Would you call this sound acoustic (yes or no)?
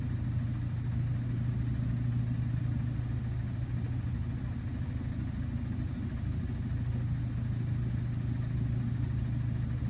yes